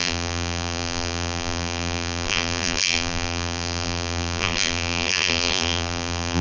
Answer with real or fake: fake